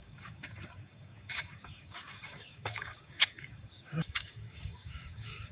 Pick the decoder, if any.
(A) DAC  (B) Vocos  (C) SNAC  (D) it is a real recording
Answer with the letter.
A